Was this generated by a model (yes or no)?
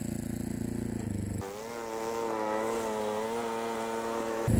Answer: no